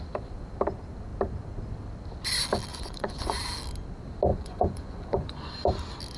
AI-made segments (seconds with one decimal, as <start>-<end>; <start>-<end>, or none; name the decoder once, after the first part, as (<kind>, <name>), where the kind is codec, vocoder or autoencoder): 2.7-3.4 (vocoder, Vocos); 4.3-5.5